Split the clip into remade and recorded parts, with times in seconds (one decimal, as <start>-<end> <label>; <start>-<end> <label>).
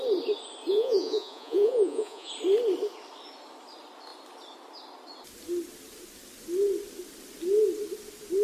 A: 0.0-0.7 recorded; 0.7-2.3 remade; 2.3-8.4 recorded